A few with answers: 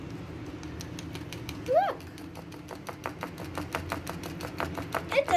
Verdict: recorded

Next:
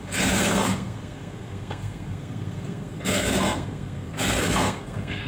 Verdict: remade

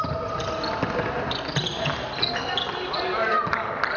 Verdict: recorded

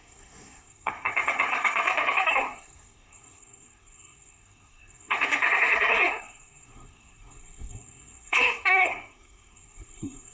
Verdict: remade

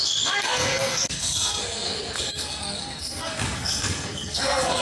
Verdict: remade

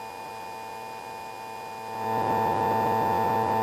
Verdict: recorded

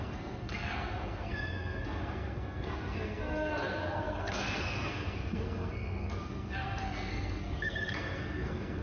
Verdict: remade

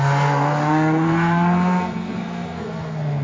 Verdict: remade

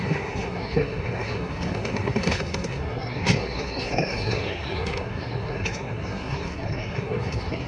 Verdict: remade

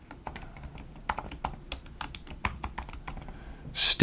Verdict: recorded